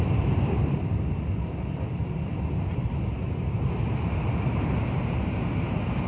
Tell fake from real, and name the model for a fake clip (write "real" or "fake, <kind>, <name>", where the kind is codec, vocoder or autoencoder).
real